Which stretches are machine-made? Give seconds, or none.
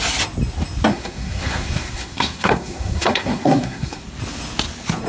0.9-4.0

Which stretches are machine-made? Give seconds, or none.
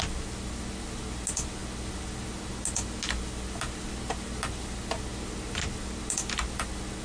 none